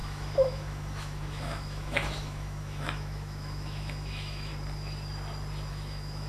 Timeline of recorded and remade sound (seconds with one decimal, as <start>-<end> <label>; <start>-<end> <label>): 0.0-4.5 remade; 4.5-5.7 recorded; 5.7-6.3 remade